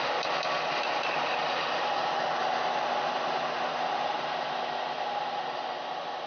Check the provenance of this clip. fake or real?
real